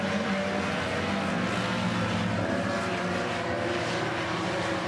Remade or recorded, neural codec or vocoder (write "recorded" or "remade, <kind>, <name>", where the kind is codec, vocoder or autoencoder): recorded